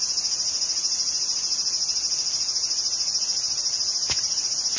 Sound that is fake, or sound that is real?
real